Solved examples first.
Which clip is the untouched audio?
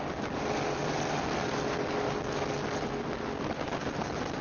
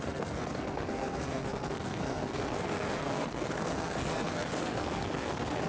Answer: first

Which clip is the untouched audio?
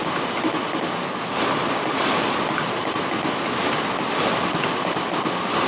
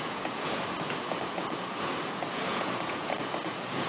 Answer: first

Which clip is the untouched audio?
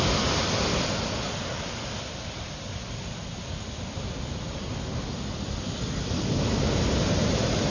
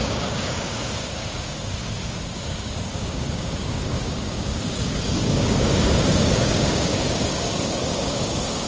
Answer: first